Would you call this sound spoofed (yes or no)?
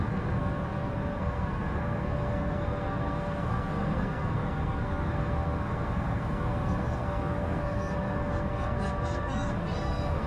yes